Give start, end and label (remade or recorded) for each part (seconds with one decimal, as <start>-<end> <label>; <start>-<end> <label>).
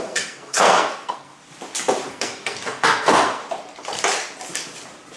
0.0-1.3 remade; 1.3-2.1 recorded; 2.1-3.4 remade; 3.4-5.2 recorded